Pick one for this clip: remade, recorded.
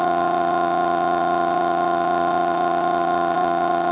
remade